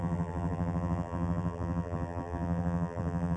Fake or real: fake